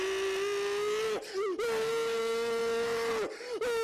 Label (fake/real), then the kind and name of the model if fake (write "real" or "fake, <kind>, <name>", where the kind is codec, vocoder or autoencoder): real